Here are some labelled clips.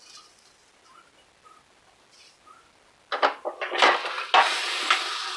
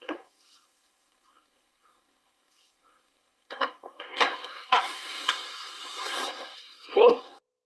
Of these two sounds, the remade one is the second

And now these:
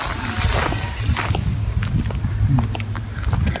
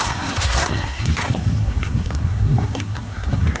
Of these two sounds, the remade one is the second